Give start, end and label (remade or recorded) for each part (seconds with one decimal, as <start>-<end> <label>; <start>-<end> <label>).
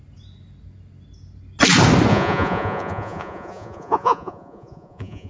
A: 0.0-2.1 recorded; 2.1-5.3 remade